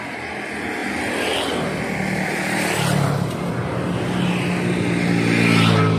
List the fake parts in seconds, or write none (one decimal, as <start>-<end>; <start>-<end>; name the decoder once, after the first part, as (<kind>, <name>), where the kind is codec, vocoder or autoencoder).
none